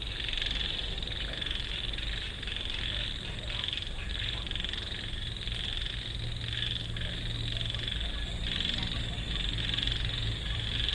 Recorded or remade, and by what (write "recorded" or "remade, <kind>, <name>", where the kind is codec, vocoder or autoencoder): recorded